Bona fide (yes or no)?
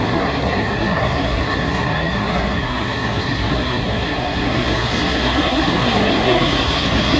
no